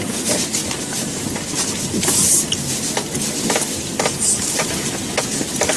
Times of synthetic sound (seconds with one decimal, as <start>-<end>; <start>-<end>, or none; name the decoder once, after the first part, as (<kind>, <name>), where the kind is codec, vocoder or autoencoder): none

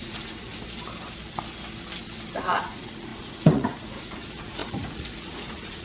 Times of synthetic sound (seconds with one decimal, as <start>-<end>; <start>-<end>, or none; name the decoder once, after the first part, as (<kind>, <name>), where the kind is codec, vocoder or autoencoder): 0.0-0.5 (vocoder, Vocos); 2.6-5.8

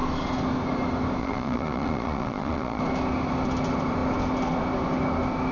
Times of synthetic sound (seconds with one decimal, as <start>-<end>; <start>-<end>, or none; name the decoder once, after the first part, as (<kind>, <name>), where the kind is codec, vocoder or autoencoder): 1.2-2.8 (vocoder, Vocos)

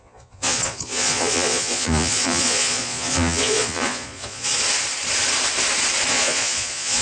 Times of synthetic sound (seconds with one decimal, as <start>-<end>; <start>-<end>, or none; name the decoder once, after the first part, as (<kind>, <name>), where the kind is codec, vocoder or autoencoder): 0.0-4.5 (vocoder, Vocos); 6.1-7.0

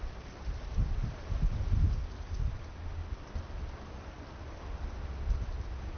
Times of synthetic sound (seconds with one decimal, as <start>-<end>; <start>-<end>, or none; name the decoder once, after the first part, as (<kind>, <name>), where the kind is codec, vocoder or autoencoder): none

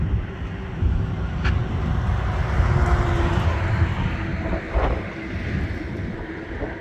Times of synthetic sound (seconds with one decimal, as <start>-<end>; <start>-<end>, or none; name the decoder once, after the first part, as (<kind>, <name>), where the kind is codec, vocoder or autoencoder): none

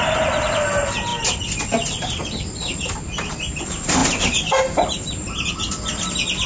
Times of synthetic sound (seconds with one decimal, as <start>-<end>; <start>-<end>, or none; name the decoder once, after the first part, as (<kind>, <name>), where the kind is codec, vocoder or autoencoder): none